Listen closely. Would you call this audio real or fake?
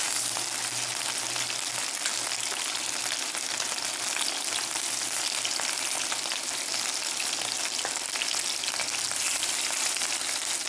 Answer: real